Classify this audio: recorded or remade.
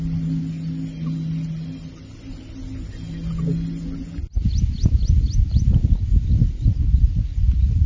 recorded